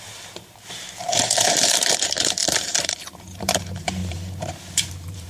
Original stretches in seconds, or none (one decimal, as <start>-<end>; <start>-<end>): none